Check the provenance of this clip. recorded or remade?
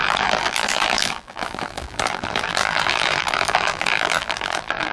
remade